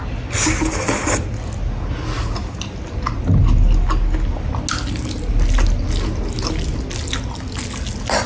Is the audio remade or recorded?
recorded